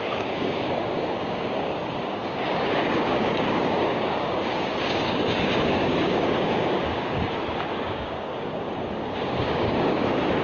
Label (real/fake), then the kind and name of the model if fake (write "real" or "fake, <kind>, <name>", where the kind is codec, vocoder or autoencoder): fake, codec, DAC